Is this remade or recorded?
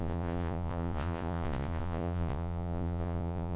remade